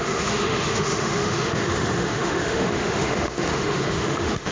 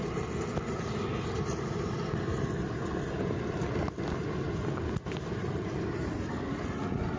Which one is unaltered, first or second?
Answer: second